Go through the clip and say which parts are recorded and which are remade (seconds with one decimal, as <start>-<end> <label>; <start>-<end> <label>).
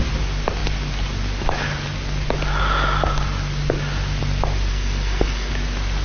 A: 0.0-4.7 recorded; 4.7-5.5 remade; 5.5-6.0 recorded